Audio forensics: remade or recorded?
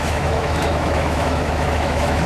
remade